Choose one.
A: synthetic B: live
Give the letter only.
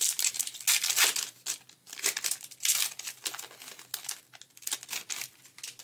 B